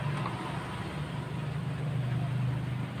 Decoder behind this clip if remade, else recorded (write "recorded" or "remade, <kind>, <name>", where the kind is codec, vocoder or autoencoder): recorded